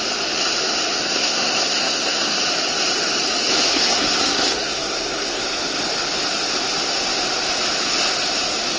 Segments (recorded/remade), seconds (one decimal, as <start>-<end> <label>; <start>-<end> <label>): 0.0-1.0 recorded; 1.0-2.4 remade; 2.4-3.7 recorded; 3.7-5.4 remade; 5.4-8.8 recorded